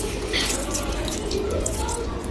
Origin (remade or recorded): remade